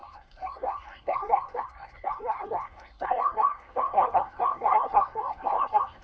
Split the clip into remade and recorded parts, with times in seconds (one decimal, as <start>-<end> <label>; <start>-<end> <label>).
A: 0.0-6.0 remade